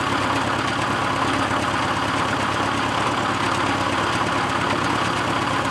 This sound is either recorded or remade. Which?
recorded